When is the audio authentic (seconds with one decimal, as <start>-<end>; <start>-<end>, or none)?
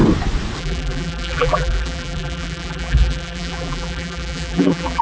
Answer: 0.0-0.6